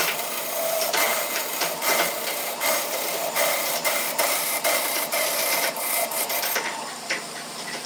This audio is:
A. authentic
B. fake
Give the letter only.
B